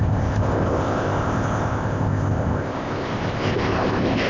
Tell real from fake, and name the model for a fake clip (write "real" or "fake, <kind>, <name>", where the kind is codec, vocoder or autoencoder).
fake, codec, ZipCodec